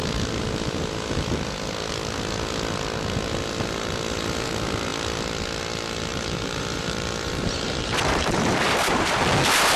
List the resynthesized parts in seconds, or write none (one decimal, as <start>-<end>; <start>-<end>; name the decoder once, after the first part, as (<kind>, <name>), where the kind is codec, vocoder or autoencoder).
6.1-9.2 (vocoder, BigVGAN v2)